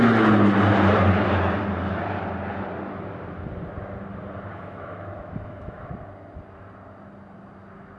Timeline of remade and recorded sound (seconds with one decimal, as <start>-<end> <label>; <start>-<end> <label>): 0.0-4.5 recorded; 4.5-5.9 remade; 5.9-8.0 recorded